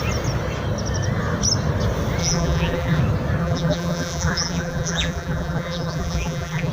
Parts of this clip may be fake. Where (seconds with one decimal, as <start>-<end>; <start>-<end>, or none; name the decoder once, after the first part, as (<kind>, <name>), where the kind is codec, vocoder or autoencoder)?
2.2-3.0 (vocoder, BigVGAN v2); 3.4-6.7